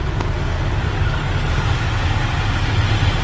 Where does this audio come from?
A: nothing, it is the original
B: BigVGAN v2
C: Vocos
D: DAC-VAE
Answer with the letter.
A